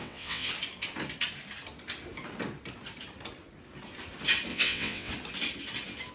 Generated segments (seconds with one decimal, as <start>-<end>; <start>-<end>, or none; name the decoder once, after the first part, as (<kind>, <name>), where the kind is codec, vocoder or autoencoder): 0.0-0.5 (vocoder, WaveNeXt); 4.5-5.1